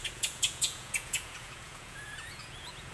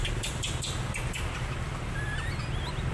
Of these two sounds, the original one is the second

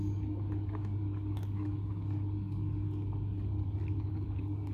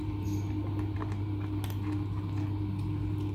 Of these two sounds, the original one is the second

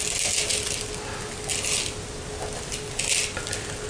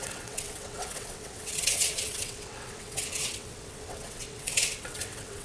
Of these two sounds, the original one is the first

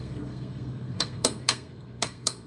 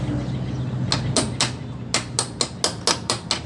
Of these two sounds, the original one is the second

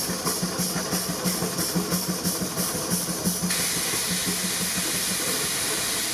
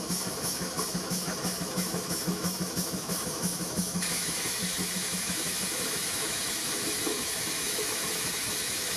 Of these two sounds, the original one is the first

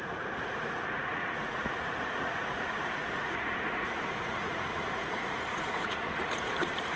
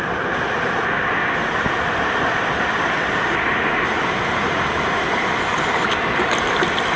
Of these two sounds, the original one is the second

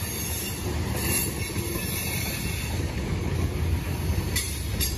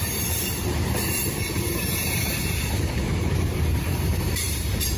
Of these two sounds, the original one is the first